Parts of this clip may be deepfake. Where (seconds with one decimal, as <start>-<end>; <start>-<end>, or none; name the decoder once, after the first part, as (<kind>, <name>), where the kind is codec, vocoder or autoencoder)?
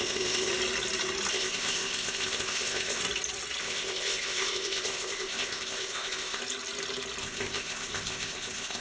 0.0-0.5 (codec, ZipCodec); 1.3-3.0; 3.6-6.4; 7.2-8.8